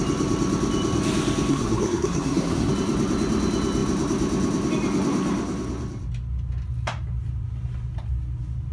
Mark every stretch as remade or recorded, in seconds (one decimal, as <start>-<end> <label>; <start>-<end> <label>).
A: 0.0-1.5 recorded; 1.5-2.7 remade; 2.7-8.7 recorded